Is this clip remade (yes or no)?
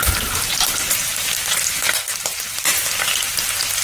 no